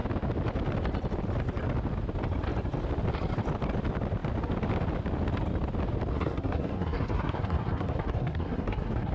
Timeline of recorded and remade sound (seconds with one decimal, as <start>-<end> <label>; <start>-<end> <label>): 0.0-6.1 recorded; 6.1-9.1 remade